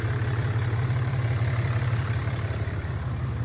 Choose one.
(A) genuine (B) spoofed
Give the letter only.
B